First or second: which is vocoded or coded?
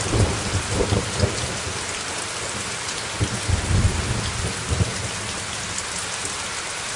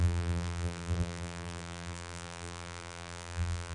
second